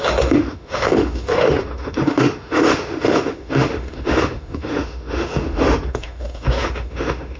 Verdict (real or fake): fake